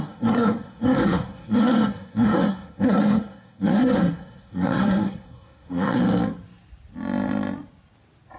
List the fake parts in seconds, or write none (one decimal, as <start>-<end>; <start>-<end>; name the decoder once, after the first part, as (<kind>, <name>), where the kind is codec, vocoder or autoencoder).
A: 0.0-6.0 (codec, SNAC)